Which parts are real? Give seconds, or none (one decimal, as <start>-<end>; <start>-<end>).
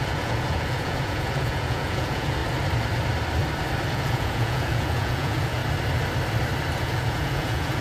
2.4-3.9; 5.6-6.8